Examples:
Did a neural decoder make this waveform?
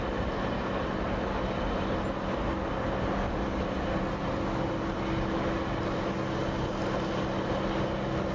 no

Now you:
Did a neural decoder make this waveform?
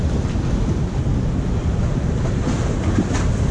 no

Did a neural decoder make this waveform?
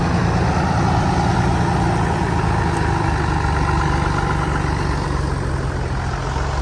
no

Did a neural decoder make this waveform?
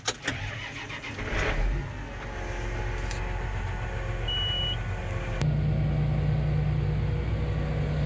no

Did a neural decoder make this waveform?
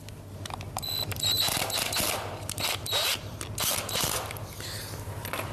no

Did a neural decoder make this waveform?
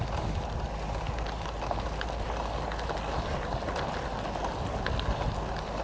no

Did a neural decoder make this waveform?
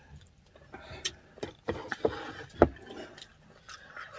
no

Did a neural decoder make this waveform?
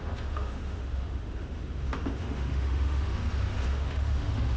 yes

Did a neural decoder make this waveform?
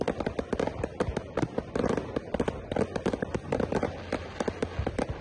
no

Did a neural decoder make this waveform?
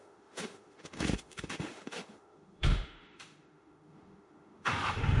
yes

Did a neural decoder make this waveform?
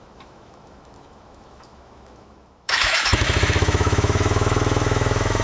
yes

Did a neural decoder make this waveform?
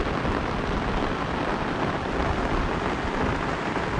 no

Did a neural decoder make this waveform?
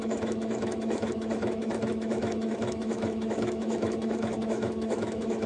yes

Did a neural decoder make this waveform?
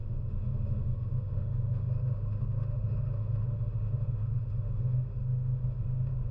yes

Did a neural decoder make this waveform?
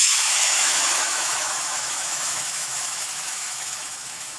yes